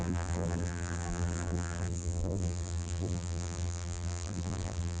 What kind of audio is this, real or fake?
fake